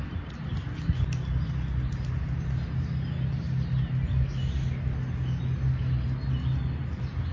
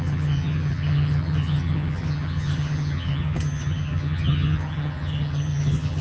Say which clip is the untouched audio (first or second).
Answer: first